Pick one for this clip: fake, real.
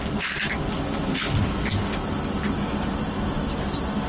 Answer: real